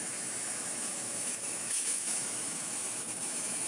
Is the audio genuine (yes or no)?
no